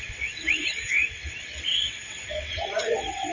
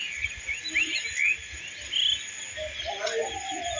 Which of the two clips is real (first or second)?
second